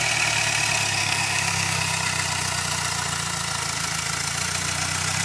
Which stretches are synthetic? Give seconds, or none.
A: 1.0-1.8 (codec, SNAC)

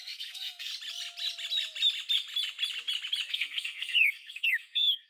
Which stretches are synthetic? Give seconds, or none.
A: 0.0-0.7 (codec, SNAC); 3.3-5.1

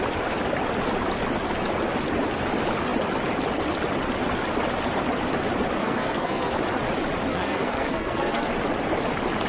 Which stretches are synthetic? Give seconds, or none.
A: 5.8-6.5 (codec, SNAC); 7.3-8.5

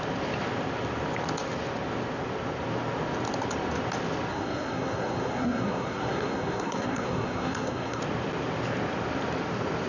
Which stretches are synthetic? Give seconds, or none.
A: 4.3-8.0 (codec, SNAC)